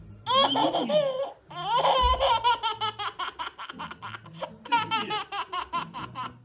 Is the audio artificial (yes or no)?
no